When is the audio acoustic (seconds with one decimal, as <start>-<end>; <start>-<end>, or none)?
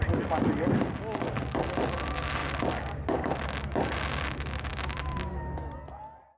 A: 0.0-6.4